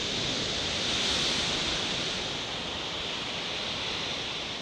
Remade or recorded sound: remade